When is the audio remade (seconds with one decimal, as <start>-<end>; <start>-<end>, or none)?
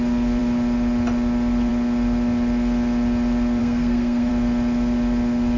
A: 3.6-4.3